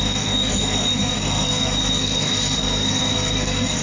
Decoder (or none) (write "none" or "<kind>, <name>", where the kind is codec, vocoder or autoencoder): codec, SNAC